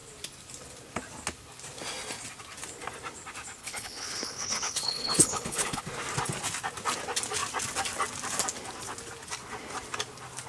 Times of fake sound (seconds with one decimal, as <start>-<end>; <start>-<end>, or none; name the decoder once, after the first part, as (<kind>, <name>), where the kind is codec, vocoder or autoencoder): 3.6-5.8 (codec, HILCodec)